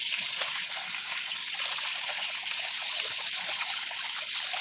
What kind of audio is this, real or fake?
real